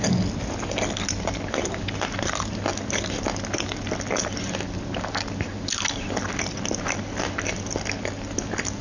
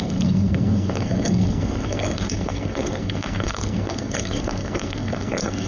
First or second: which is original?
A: first